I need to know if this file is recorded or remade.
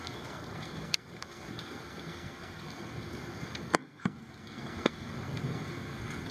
remade